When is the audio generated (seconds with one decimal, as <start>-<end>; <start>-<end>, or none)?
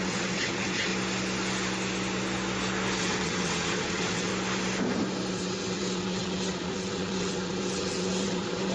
0.0-0.9; 3.0-4.3; 5.3-8.7